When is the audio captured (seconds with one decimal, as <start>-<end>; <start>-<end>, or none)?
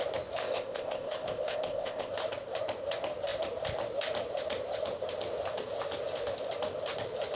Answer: 0.0-0.4; 2.1-7.3